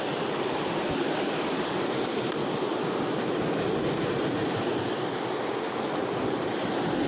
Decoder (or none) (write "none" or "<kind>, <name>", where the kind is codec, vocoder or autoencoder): none